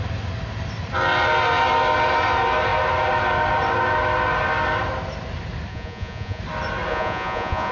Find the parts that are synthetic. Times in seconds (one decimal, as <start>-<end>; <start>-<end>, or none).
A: 5.7-6.4; 6.9-7.7

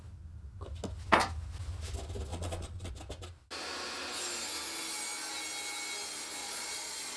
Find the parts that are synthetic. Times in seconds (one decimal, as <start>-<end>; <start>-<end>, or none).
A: 2.3-2.9; 6.4-7.2